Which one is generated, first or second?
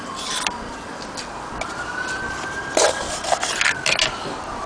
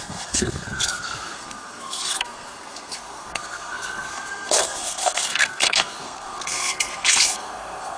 second